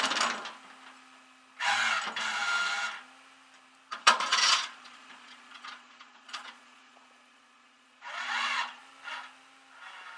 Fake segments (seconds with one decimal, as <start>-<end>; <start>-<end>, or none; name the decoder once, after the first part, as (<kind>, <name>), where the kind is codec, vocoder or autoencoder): 3.9-8.8 (vocoder, Vocos)